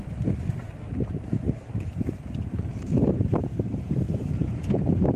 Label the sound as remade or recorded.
remade